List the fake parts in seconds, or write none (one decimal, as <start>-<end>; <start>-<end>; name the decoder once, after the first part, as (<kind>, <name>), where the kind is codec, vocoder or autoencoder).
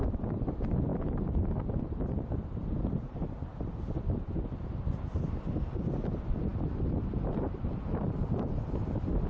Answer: none